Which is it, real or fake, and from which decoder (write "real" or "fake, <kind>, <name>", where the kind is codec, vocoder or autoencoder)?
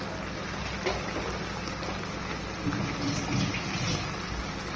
real